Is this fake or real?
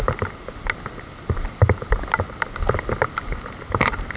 real